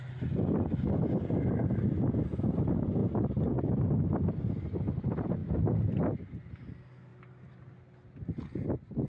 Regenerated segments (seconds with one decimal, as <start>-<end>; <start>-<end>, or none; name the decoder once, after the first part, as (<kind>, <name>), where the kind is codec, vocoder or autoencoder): none